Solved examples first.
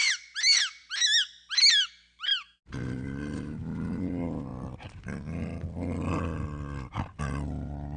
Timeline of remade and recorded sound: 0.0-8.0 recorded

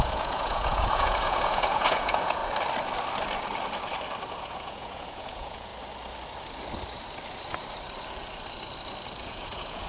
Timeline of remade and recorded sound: 0.0-2.4 remade; 2.4-4.3 recorded; 4.3-5.7 remade; 5.7-9.2 recorded; 9.2-9.9 remade

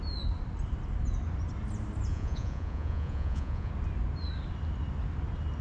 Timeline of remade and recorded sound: 0.0-2.1 recorded; 2.1-3.7 remade; 3.7-5.6 recorded

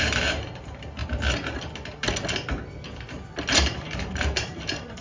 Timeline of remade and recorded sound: 0.0-1.0 remade; 1.0-4.0 recorded; 4.0-5.0 remade